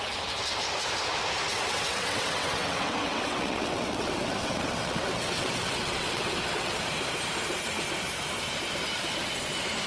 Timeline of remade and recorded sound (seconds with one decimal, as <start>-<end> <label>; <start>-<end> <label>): 0.0-1.5 recorded; 1.5-6.8 remade; 6.8-9.9 recorded